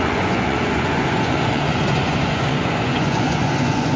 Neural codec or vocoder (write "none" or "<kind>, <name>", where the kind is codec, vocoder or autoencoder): vocoder, Vocos